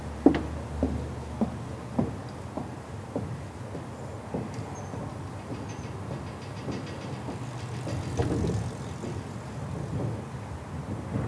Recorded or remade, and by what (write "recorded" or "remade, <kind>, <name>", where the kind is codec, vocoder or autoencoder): recorded